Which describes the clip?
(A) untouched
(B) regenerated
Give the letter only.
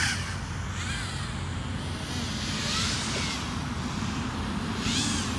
A